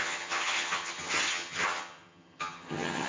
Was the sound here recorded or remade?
remade